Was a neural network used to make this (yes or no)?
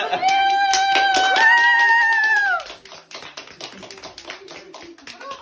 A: no